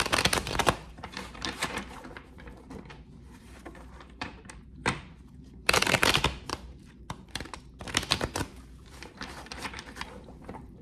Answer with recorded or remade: remade